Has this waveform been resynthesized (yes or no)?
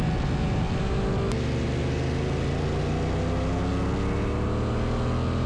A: no